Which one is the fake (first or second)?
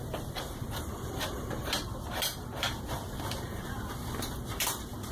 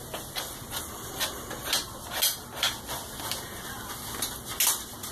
first